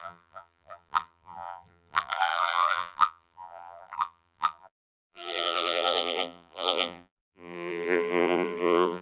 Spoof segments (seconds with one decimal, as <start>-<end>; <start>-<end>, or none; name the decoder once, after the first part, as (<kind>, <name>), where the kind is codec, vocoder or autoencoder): 0.0-9.0 (vocoder, BigVGAN v2)